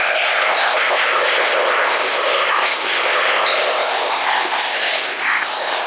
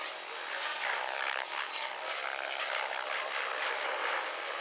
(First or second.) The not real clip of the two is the first